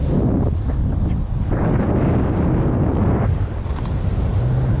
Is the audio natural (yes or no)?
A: yes